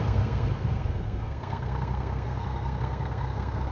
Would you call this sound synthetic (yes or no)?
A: yes